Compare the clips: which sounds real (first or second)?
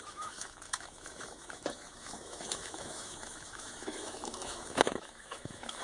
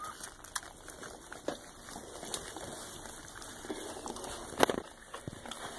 second